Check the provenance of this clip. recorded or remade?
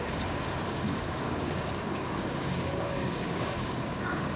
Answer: remade